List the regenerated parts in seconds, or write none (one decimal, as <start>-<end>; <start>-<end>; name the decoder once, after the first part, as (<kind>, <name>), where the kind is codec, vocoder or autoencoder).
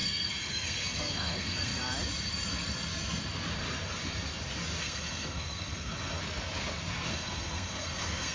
0.0-1.7 (codec, SNAC); 4.8-6.2; 7.1-8.3